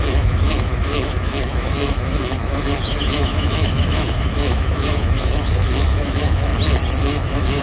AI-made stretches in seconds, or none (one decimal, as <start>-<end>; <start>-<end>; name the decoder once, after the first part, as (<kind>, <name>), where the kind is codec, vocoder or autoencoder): 0.0-6.5 (autoencoder, DAC-VAE); 7.0-7.6